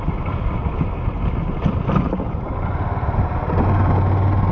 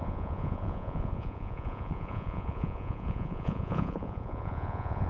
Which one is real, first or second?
first